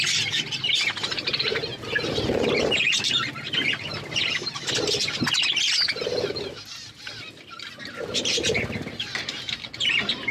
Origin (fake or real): real